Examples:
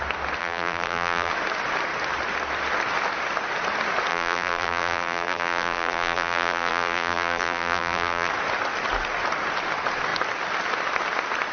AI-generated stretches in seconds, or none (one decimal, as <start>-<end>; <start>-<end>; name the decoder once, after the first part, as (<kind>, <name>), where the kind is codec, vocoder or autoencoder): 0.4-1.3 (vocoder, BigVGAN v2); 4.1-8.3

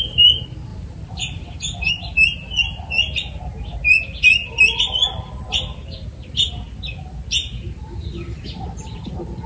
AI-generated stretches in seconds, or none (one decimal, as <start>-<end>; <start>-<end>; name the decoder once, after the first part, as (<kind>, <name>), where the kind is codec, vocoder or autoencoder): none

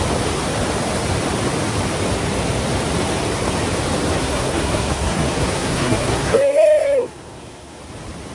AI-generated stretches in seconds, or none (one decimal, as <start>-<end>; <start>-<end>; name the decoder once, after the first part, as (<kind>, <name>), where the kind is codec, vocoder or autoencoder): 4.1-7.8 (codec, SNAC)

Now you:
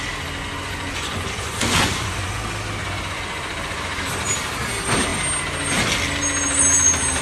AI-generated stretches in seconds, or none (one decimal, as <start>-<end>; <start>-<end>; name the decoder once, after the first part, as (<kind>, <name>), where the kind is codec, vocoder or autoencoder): 0.4-2.4 (vocoder, Vocos); 2.8-4.1

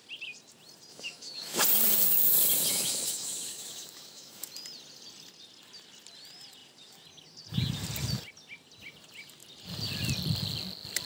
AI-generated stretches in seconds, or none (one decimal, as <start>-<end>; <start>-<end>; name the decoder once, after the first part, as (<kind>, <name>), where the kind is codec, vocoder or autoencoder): 0.9-1.6 (autoencoder, DAC-VAE); 2.7-4.5

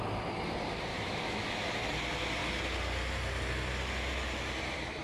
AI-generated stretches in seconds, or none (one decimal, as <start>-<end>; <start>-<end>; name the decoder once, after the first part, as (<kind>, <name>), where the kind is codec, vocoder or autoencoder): 0.9-1.8 (autoencoder, DAC-VAE)

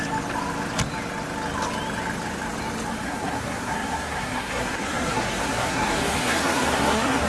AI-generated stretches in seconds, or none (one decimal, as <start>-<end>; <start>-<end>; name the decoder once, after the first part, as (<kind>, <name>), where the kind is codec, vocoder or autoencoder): 2.9-7.3 (codec, SNAC)

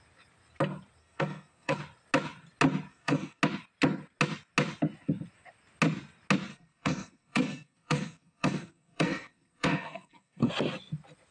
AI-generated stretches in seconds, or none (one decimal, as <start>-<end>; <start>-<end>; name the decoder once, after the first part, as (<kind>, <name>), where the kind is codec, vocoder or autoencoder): 1.0-1.8 (codec, SNAC); 2.9-3.4; 6.5-10.5